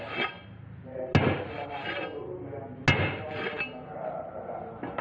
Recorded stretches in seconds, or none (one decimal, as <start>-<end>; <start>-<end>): 0.0-5.0